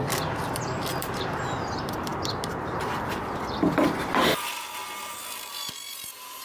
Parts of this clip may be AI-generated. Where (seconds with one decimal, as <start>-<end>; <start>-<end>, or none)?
0.0-2.1; 3.2-4.8; 5.5-6.4